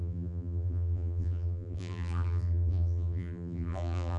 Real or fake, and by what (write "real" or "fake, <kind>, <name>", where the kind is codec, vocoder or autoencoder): fake, vocoder, BigVGAN v2